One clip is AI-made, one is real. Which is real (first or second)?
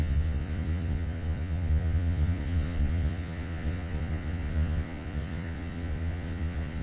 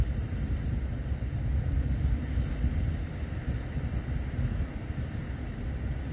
second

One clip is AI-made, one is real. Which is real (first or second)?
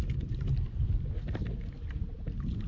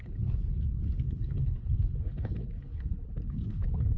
first